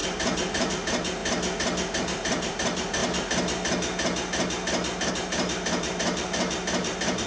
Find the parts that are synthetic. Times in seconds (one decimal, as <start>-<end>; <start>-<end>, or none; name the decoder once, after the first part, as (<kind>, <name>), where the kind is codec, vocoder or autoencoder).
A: 0.0-1.2 (vocoder, BigVGAN v2); 2.0-3.0; 5.1-7.3